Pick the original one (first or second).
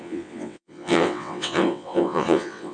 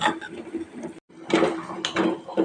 second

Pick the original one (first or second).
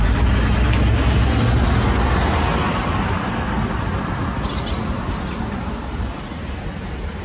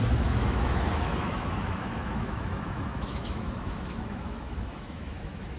first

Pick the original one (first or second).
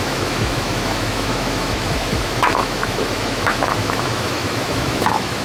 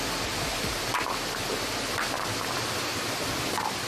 second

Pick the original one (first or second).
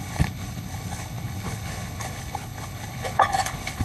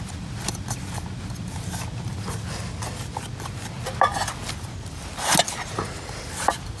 second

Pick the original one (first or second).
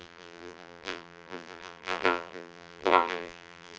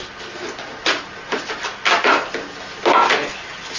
second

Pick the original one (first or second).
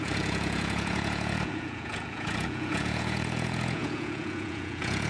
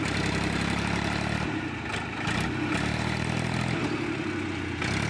second